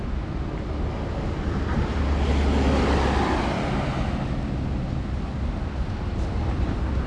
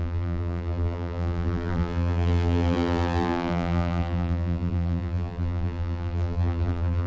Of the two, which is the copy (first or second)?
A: second